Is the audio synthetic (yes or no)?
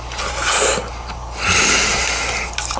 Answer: no